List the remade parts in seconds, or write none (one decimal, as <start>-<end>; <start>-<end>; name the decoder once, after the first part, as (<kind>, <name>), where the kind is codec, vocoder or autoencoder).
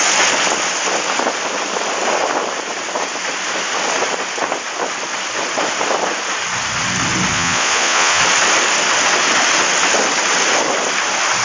7.3-8.2 (vocoder, Vocos)